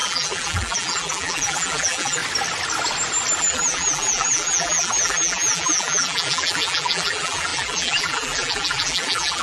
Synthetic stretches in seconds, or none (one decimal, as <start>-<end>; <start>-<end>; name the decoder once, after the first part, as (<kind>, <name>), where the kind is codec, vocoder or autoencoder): 0.0-2.2 (vocoder, BigVGAN v2); 3.4-9.4